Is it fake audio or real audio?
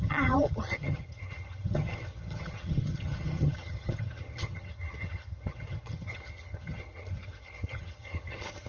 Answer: fake